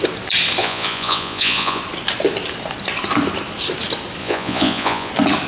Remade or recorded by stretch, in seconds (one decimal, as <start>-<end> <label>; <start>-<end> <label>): 0.0-0.6 recorded; 0.6-1.8 remade; 1.8-4.2 recorded; 4.2-5.1 remade; 5.1-5.5 recorded